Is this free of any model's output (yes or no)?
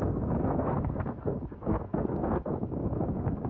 no